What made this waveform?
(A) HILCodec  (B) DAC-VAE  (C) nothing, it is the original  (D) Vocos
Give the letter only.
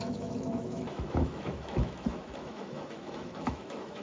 B